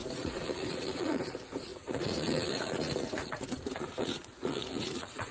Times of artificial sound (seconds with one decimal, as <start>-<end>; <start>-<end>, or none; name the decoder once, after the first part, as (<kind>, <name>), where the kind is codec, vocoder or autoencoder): 0.0-1.2 (vocoder, Vocos); 1.7-5.3